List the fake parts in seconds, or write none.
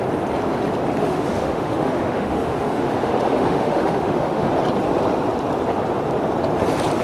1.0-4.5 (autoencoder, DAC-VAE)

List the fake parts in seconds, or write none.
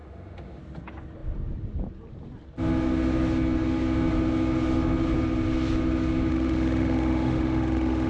0.0-0.6 (autoencoder, DAC-VAE); 6.3-8.1